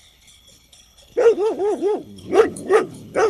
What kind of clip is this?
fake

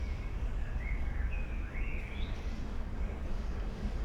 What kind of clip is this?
fake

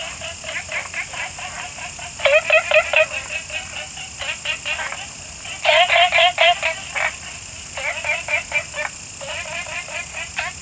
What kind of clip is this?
real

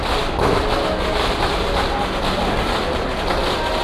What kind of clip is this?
real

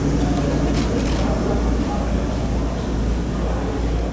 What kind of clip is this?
real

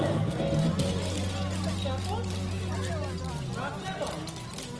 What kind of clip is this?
real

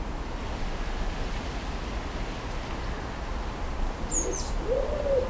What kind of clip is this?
real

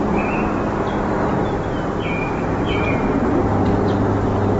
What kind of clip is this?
real